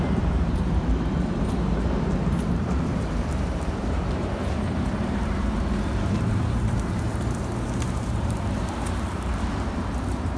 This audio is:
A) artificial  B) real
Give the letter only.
A